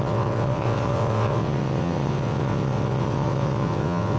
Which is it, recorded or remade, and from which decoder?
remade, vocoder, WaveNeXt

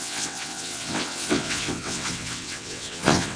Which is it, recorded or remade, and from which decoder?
remade, vocoder, WaveNeXt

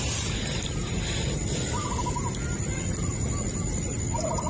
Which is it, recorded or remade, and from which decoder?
recorded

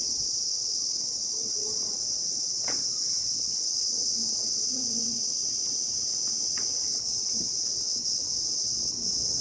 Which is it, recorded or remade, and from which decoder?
remade, vocoder, WaveNeXt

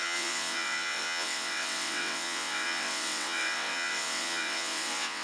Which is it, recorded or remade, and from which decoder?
remade, vocoder, WaveNeXt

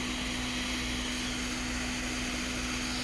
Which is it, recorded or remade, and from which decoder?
recorded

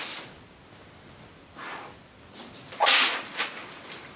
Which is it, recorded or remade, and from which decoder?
recorded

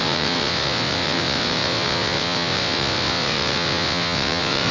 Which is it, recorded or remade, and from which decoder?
remade, vocoder, WaveNeXt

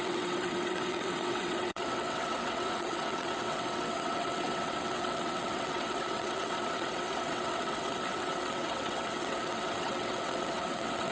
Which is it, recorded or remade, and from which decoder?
remade, vocoder, WaveNeXt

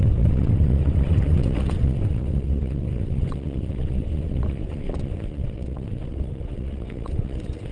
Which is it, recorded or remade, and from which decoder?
remade, vocoder, WaveNeXt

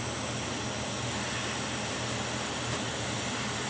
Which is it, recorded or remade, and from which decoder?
recorded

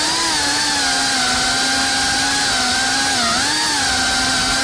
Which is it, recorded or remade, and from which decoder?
recorded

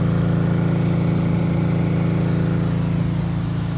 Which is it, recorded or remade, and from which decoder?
recorded